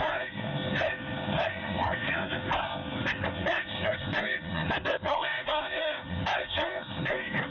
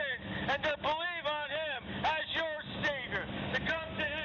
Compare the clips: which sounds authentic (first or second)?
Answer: second